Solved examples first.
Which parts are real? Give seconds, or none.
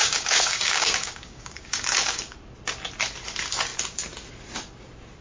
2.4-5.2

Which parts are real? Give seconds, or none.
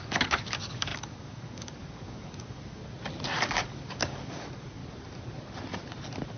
2.8-3.4; 4.8-6.4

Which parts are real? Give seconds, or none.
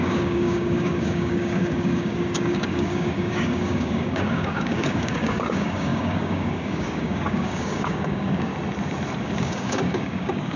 8.5-9.2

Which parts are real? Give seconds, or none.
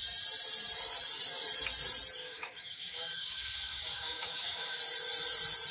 0.0-2.2; 4.8-5.7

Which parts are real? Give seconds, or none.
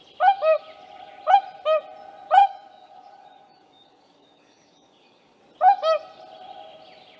0.0-2.4; 5.4-7.2